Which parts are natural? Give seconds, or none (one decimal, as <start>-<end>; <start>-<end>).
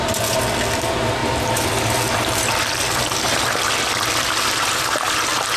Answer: 0.0-5.6